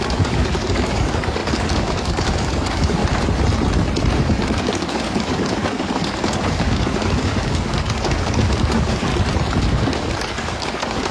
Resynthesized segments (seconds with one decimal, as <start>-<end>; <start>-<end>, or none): 0.0-3.0; 4.2-9.1; 9.6-11.1